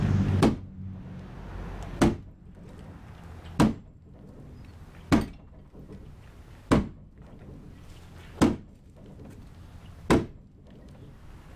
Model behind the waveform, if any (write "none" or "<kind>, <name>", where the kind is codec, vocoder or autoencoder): none